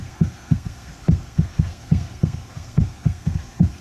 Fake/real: fake